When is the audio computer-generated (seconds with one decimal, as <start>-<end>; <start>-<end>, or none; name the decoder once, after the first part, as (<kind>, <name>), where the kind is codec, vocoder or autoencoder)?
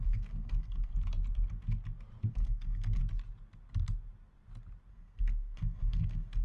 0.0-0.9 (codec, SNAC); 2.3-3.0; 4.9-6.4